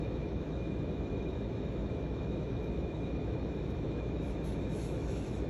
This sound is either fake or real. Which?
fake